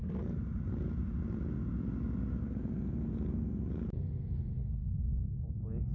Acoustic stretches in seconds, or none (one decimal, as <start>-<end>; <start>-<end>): 0.0-5.9